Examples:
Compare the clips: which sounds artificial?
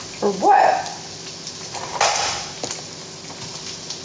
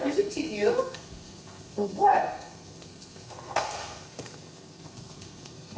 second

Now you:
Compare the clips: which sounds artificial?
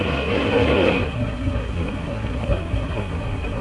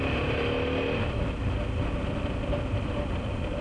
first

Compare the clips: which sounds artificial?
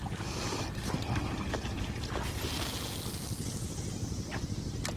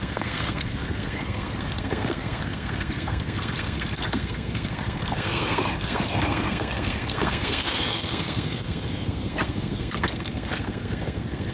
second